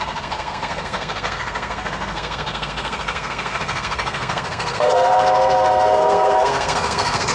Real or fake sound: fake